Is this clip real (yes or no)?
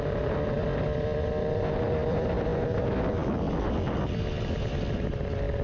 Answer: yes